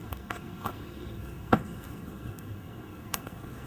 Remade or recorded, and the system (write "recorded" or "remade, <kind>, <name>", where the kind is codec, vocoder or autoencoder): remade, codec, SNAC